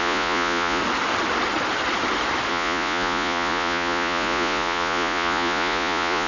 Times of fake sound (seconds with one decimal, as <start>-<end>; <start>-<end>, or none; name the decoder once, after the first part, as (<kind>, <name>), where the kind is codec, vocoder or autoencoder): 0.0-0.8 (vocoder, Vocos); 2.5-6.3